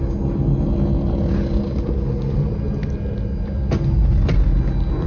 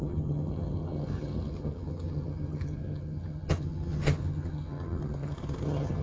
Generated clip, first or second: second